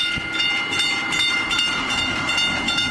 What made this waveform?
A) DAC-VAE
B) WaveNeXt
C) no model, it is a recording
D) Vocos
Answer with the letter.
C